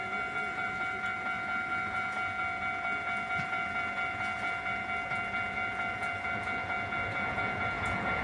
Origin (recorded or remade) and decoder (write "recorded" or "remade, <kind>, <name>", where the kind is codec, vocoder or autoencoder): remade, vocoder, Vocos